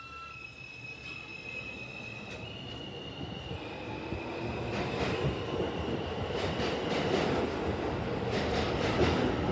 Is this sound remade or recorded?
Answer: recorded